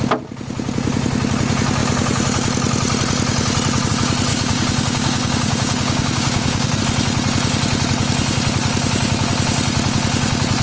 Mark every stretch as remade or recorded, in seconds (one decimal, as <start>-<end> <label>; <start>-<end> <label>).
0.0-4.3 recorded; 4.3-6.8 remade; 6.8-10.6 recorded